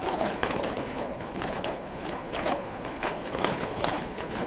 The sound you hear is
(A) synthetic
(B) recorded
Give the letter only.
A